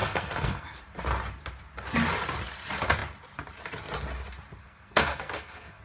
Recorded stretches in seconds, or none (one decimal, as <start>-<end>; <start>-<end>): 0.8-4.6